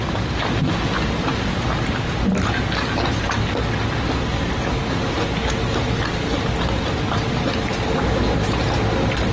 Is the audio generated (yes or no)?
no